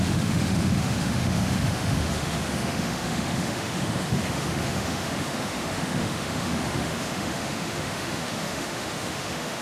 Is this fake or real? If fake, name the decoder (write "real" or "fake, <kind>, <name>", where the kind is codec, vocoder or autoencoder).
fake, autoencoder, DAC-VAE